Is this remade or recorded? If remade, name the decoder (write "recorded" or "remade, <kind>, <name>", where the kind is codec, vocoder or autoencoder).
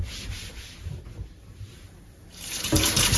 remade, vocoder, BigVGAN v2